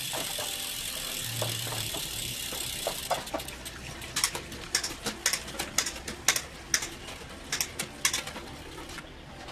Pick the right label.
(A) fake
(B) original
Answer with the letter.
B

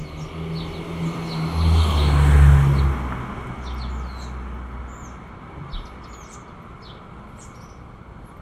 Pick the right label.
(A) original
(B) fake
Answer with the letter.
A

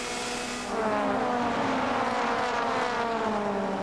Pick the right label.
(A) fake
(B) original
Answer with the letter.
B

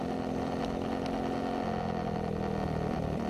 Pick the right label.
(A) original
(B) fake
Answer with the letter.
A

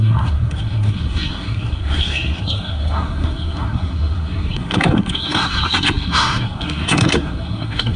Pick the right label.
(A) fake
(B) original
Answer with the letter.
A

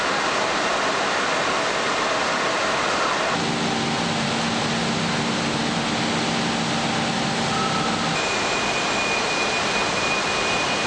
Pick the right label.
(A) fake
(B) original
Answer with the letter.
B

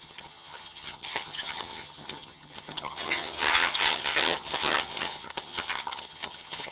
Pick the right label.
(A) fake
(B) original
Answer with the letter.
A